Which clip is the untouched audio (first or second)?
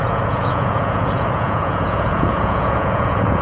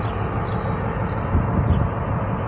second